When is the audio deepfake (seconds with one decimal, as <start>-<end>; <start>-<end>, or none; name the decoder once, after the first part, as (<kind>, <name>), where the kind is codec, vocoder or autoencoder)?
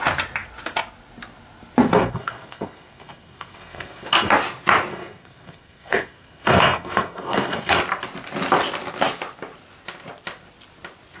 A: 1.9-4.3 (codec, SNAC); 4.9-7.8